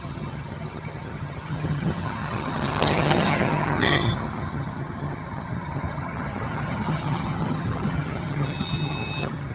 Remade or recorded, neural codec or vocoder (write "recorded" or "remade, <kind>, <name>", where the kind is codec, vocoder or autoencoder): remade, vocoder, HiFi-GAN